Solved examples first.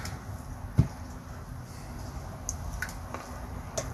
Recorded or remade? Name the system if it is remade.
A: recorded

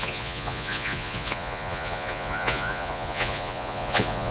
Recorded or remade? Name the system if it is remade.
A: remade, vocoder, Vocos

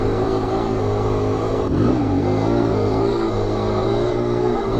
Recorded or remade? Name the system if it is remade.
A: remade, codec, SNAC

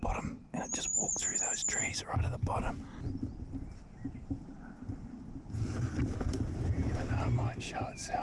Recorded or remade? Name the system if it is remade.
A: recorded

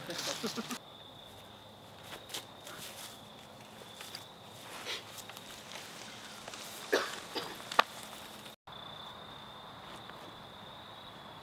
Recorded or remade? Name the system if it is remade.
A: recorded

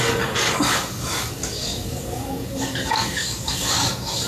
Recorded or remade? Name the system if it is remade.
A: remade, codec, DAC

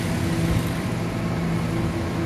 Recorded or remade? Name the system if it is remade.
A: recorded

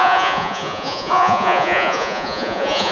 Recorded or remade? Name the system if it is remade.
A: remade, vocoder, Vocos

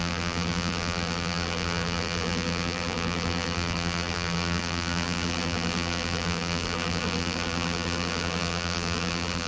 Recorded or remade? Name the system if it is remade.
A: remade, vocoder, BigVGAN v2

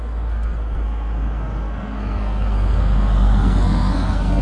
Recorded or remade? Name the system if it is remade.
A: remade, codec, SNAC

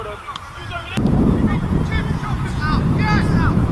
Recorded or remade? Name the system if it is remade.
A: recorded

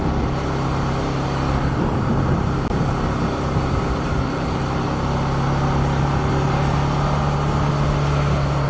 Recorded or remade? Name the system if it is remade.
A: recorded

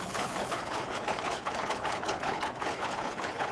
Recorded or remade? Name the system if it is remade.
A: remade, codec, HILCodec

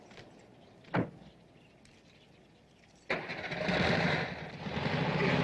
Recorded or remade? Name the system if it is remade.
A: recorded